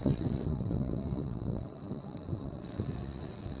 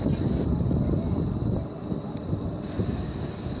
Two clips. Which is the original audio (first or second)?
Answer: second